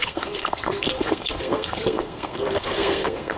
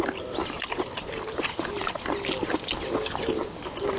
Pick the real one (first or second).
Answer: second